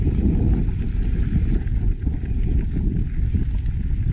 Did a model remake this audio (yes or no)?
no